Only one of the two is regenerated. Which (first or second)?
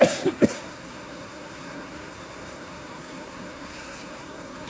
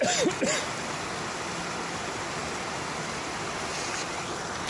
first